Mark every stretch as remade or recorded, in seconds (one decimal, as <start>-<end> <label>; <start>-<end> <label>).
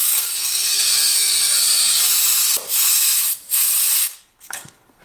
0.0-2.0 remade; 2.0-4.0 recorded; 4.0-5.0 remade